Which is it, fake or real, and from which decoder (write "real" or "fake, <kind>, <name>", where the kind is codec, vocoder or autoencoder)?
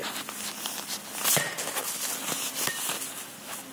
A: real